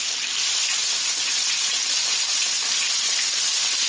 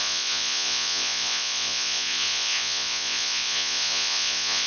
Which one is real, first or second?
first